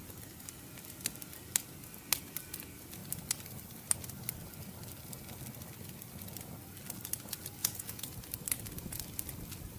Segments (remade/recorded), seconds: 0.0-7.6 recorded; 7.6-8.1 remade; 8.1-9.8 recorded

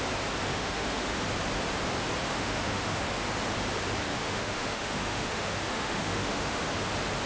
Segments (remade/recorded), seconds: 0.0-0.5 recorded; 0.5-1.2 remade; 1.2-2.3 recorded; 2.3-3.0 remade; 3.0-4.1 recorded; 4.1-6.6 remade; 6.6-7.3 recorded

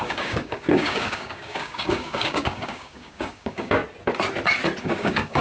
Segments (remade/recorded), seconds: 0.0-3.8 remade; 3.8-4.8 recorded; 4.8-5.4 remade

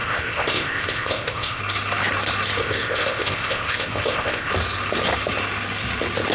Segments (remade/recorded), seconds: 0.0-1.6 remade; 1.6-2.6 recorded; 2.6-4.5 remade; 4.5-6.3 recorded

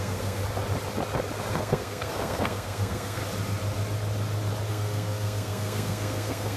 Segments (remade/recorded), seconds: 0.0-0.4 remade; 0.4-1.5 recorded; 1.5-3.2 remade; 3.2-4.7 recorded; 4.7-6.6 remade

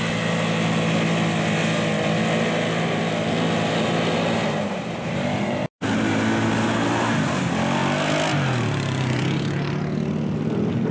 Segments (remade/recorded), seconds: 0.0-10.9 recorded

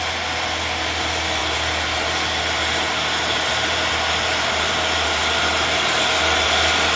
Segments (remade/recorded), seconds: 0.0-7.0 recorded

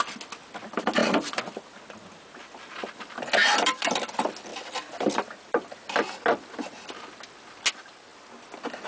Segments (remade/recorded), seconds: 0.0-1.0 recorded; 1.0-1.6 remade; 1.6-3.4 recorded; 3.4-4.1 remade; 4.1-4.5 recorded; 4.5-6.2 remade; 6.2-8.9 recorded